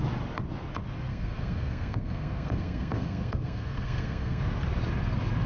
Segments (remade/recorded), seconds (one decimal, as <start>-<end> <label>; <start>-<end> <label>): 0.0-1.1 recorded; 1.1-4.4 remade; 4.4-5.5 recorded